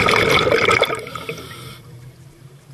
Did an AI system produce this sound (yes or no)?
no